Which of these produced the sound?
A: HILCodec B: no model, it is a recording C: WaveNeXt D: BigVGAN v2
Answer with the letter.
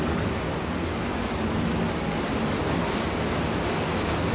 B